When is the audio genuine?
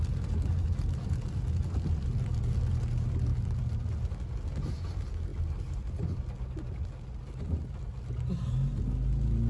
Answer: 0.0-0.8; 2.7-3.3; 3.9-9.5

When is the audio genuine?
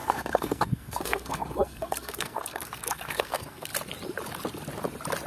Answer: 3.7-5.3